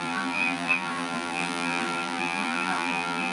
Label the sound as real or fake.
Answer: fake